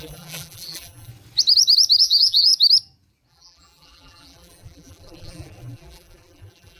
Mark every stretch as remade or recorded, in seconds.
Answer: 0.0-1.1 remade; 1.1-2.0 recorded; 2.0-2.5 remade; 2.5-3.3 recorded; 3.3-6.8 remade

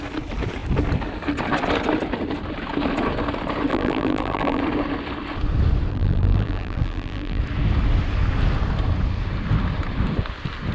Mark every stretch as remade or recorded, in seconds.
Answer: 0.0-3.7 recorded; 3.7-4.6 remade; 4.6-5.9 recorded; 5.9-7.4 remade; 7.4-10.7 recorded

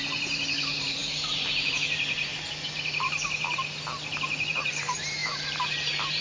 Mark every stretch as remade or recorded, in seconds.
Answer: 0.0-2.3 remade; 2.3-4.5 recorded; 4.5-6.2 remade

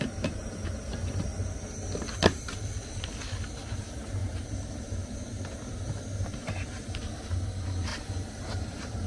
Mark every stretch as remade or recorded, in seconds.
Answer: 0.0-1.3 remade; 1.3-3.8 recorded; 3.8-9.1 remade